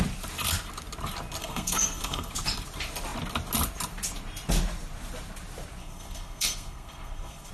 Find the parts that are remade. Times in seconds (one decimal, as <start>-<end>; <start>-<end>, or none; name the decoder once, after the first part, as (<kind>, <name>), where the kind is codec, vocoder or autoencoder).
1.4-2.3 (codec, SNAC); 5.8-7.5